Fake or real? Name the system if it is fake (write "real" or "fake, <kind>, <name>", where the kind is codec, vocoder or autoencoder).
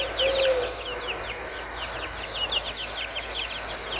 real